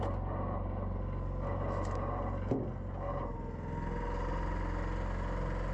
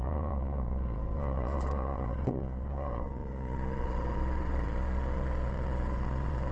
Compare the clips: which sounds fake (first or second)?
second